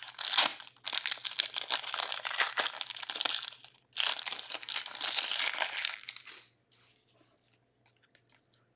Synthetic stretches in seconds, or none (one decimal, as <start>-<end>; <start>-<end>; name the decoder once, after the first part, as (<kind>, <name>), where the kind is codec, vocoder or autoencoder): none